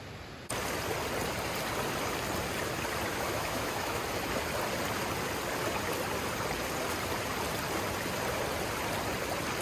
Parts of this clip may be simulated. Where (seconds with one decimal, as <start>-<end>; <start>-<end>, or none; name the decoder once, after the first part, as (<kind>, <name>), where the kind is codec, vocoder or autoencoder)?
3.1-4.0 (autoencoder, DAC-VAE)